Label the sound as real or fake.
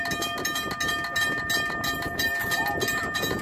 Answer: real